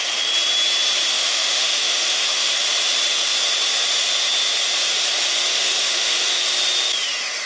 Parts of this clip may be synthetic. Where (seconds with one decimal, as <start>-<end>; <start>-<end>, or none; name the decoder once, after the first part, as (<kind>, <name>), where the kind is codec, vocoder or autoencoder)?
1.1-2.5 (autoencoder, DAC-VAE); 5.5-6.4